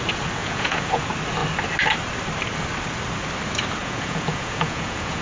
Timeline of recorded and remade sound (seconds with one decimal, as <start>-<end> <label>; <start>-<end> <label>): 0.0-0.4 recorded; 0.4-1.0 remade; 1.0-3.8 recorded; 3.8-5.2 remade